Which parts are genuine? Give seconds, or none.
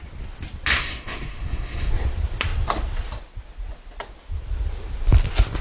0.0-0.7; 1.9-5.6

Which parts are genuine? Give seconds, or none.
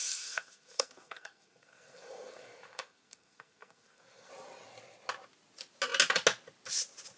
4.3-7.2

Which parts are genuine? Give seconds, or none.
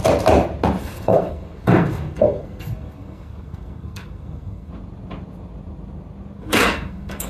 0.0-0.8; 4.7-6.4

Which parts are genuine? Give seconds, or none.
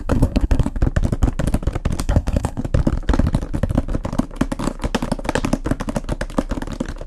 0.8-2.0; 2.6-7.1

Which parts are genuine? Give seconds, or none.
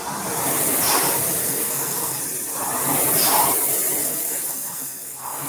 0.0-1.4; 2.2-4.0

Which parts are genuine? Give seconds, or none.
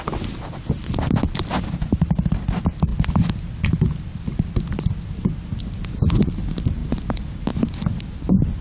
0.0-8.6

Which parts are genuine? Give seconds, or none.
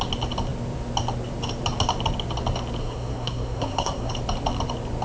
0.0-2.8; 4.1-5.0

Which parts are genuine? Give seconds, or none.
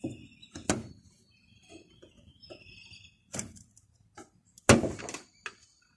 0.0-6.0